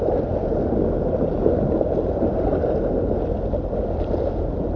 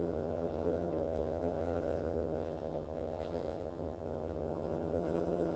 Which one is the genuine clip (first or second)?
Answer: first